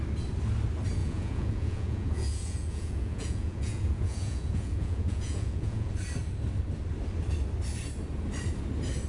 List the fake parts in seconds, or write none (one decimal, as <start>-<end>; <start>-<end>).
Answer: 1.0-5.9